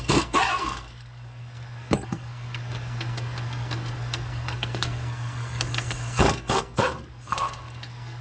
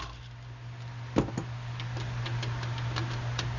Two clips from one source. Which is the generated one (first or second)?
first